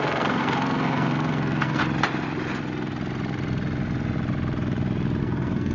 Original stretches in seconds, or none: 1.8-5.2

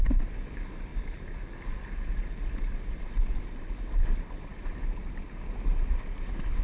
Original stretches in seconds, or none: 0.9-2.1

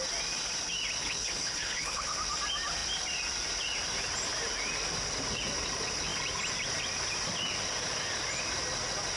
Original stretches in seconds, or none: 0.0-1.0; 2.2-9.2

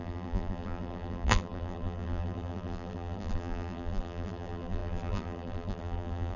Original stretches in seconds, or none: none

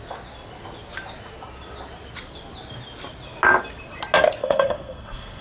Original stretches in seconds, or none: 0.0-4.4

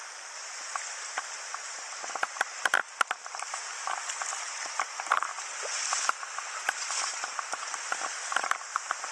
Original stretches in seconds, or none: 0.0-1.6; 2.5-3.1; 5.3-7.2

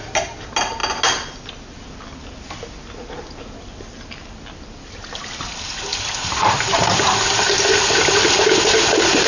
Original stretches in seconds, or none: 0.0-9.3

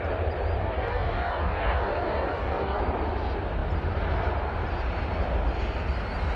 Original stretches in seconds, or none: 0.0-0.6; 2.8-6.4